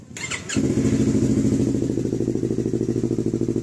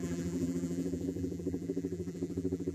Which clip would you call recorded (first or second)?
first